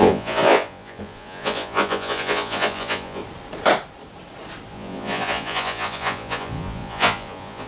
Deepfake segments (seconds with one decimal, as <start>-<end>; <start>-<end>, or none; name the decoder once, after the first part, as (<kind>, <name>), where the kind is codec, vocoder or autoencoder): 0.0-3.2 (vocoder, Vocos); 4.7-7.7